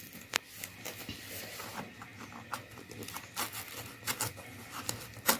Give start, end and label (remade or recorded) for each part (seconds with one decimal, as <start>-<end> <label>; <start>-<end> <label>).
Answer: 0.0-5.4 recorded